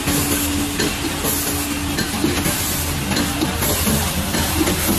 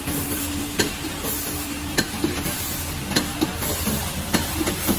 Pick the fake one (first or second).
second